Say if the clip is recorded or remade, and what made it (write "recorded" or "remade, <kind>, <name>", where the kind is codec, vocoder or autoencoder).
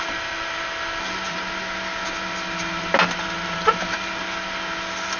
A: recorded